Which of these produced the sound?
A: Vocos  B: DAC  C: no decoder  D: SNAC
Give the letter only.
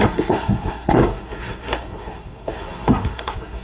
D